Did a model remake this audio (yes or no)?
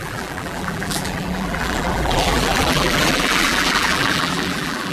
yes